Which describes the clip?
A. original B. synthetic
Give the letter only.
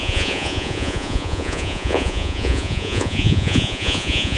B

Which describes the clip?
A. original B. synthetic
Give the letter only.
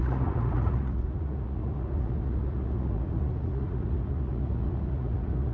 B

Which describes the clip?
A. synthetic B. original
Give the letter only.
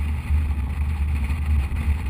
B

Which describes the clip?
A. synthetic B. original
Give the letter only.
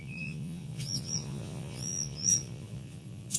A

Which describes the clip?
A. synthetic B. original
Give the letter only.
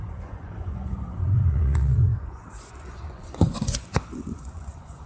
A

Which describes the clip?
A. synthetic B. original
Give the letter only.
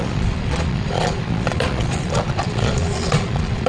A